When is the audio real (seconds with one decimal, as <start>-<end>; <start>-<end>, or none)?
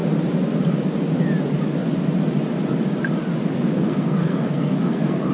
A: 0.0-3.5